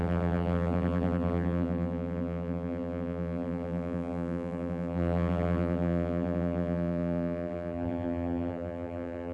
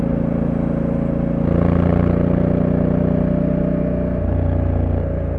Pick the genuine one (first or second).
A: second